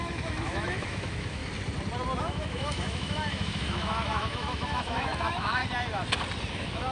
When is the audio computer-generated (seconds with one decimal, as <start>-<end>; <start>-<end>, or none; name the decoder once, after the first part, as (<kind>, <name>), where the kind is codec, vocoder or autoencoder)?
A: 0.0-1.4 (autoencoder, DAC-VAE); 2.2-5.6; 6.5-6.9